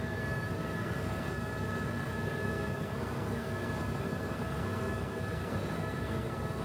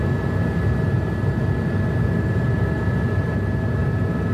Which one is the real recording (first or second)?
second